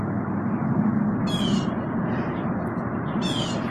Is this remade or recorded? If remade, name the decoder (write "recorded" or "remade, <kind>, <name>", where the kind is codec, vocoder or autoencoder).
recorded